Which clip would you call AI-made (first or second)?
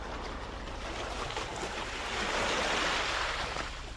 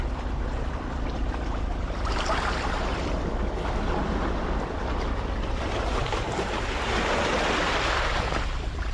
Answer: second